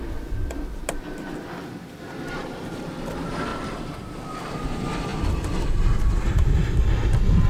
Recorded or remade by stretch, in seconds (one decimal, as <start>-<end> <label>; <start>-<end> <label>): 0.0-2.4 recorded; 2.4-2.9 remade; 2.9-3.5 recorded; 3.5-4.5 remade; 4.5-5.1 recorded; 5.1-6.0 remade; 6.0-7.5 recorded